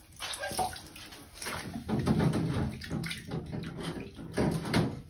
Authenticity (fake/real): real